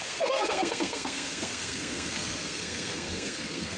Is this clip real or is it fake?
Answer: fake